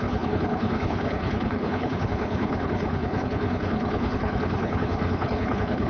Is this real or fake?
fake